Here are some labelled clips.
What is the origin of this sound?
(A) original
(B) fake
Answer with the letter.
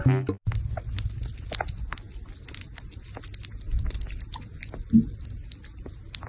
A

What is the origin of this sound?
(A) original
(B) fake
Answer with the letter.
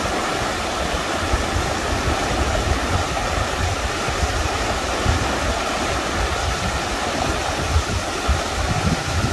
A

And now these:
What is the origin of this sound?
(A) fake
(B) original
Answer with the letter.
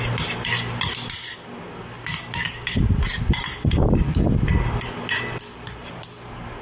B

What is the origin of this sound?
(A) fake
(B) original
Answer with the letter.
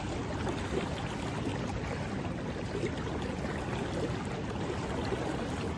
B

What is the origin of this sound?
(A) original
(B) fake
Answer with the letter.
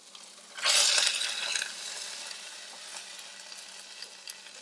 A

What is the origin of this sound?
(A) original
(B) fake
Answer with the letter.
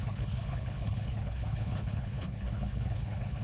B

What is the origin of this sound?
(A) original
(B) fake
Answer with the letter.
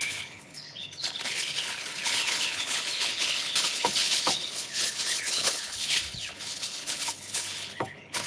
B